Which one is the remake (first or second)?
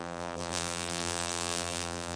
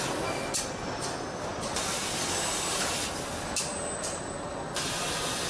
first